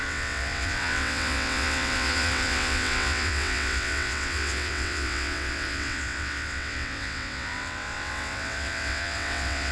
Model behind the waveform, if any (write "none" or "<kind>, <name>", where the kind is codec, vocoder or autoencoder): vocoder, WaveNeXt